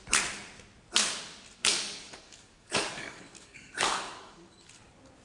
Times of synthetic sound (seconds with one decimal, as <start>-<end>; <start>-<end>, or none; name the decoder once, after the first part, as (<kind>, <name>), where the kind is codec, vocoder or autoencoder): 1.6-4.7 (codec, DAC)